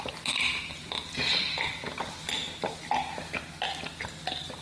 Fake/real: fake